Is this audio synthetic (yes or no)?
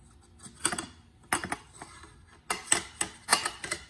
no